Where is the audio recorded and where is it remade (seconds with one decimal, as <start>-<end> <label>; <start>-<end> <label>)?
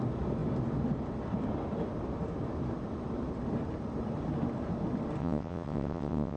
0.0-5.2 recorded; 5.2-6.4 remade